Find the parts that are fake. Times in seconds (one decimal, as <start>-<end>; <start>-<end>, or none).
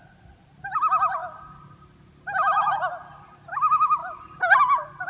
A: none